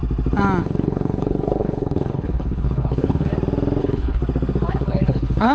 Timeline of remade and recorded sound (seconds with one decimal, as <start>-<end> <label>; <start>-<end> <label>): 0.0-0.6 recorded; 0.6-3.3 remade; 3.3-3.8 recorded; 3.8-4.2 remade; 4.2-4.7 recorded; 4.7-5.5 remade